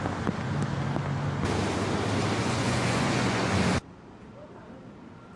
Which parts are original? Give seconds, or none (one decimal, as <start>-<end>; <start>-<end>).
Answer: 0.0-2.4; 3.5-5.4